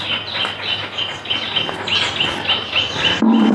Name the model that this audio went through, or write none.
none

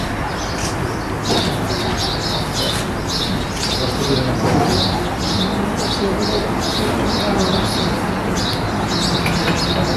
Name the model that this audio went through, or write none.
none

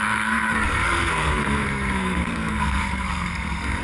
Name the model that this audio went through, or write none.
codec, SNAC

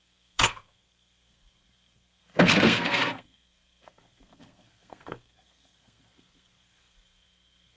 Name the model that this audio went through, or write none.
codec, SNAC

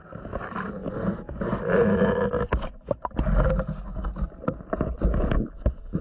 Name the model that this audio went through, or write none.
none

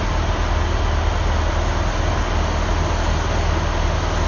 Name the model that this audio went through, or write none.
none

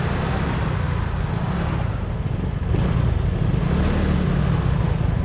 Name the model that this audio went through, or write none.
none